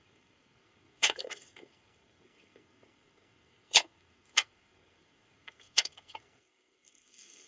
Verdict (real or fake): fake